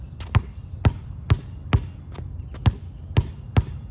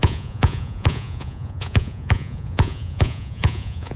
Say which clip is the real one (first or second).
first